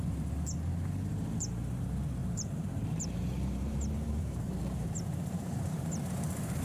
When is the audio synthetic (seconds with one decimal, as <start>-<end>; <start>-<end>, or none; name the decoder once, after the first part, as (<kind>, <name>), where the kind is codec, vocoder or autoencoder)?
2.2-6.1 (vocoder, BigVGAN v2)